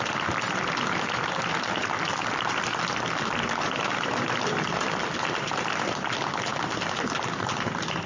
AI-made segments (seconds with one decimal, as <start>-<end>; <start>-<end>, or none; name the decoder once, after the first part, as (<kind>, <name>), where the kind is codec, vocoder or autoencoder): none